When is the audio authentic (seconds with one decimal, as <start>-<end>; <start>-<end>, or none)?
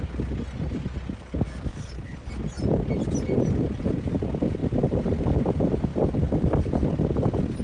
0.0-1.7; 2.3-7.6